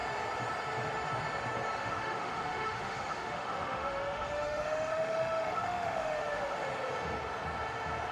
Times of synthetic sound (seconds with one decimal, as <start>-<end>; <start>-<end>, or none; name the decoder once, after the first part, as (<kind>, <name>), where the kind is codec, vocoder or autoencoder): 1.8-6.7 (autoencoder, DAC-VAE)